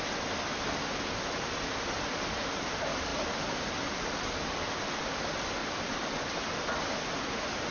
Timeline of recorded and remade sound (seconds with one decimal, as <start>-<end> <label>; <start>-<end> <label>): 0.0-5.6 recorded; 5.6-6.4 remade; 6.4-7.7 recorded